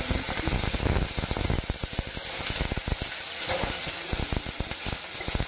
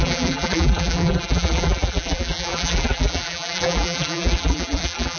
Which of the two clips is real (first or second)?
first